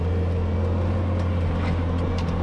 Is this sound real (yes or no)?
yes